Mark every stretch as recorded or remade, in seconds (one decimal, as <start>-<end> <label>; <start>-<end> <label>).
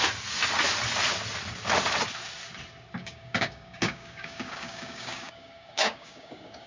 0.0-3.0 recorded; 3.0-6.7 remade